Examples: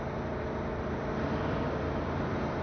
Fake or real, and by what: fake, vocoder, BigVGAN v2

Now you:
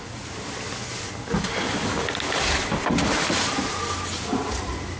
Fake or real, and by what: real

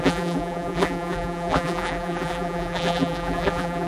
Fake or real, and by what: fake, vocoder, BigVGAN v2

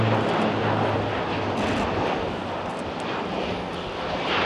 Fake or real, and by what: real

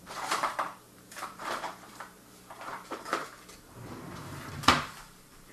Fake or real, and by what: fake, vocoder, BigVGAN v2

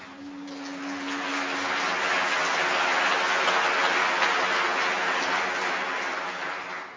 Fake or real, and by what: real